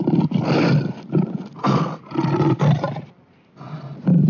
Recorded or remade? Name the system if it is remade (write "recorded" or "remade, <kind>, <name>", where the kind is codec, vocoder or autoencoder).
recorded